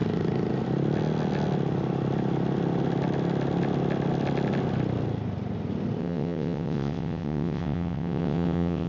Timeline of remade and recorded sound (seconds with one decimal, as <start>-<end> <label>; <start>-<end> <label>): 0.0-6.0 recorded; 6.0-8.9 remade